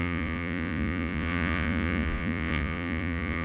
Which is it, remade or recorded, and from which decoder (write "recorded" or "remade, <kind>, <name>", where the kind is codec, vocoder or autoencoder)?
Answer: remade, vocoder, Vocos